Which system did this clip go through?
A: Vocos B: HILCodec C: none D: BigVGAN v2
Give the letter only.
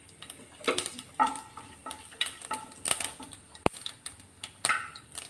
C